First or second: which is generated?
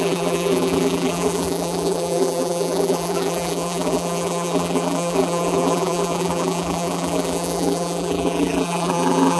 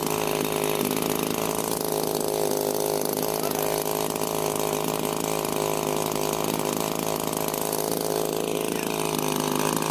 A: first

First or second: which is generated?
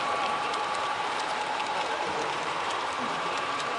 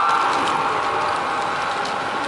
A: first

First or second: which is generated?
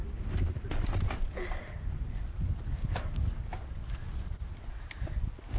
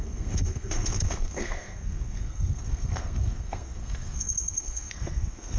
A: second